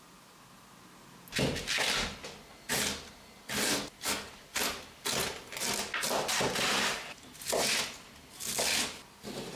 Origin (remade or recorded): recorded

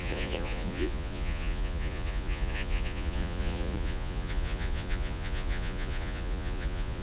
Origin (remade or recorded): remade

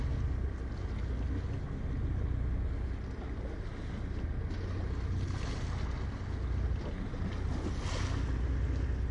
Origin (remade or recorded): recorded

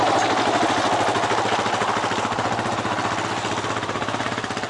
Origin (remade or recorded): recorded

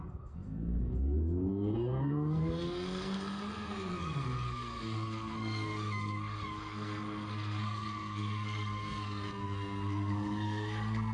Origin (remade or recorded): remade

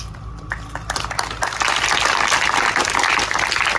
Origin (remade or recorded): recorded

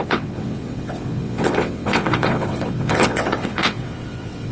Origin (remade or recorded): remade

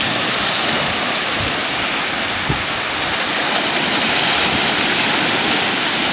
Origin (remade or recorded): recorded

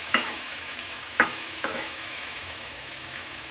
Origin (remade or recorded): remade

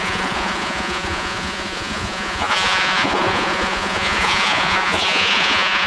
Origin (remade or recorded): remade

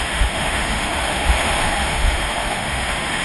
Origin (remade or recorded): remade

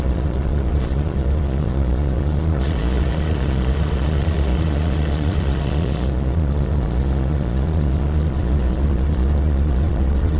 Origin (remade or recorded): remade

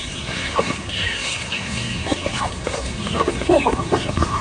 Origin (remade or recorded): remade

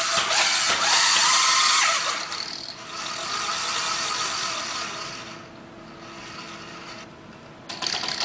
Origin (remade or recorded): recorded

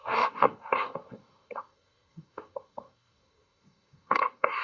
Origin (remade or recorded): remade